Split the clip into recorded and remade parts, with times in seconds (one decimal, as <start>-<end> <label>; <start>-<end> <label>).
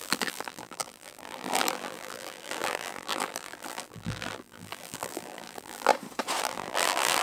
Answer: 0.0-5.9 remade; 5.9-6.4 recorded; 6.4-7.2 remade